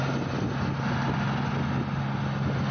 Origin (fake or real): real